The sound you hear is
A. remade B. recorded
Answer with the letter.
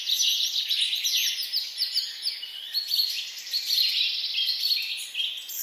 B